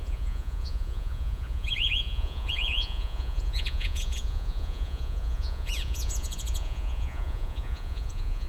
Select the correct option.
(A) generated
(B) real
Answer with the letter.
A